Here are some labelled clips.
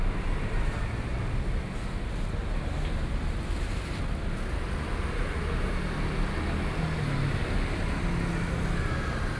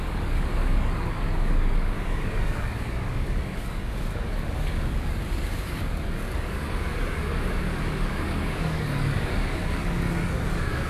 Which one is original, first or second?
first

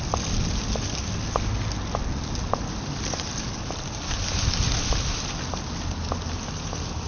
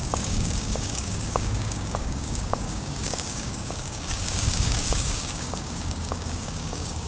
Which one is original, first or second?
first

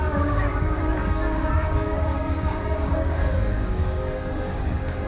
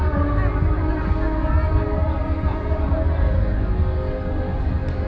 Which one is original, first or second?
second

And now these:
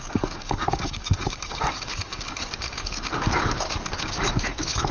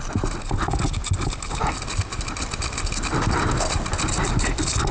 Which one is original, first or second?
second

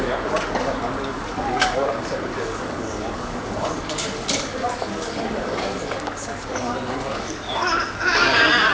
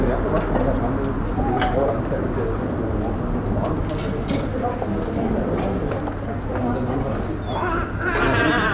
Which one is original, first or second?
second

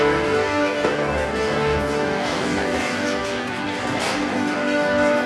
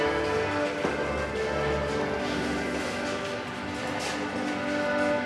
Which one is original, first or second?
second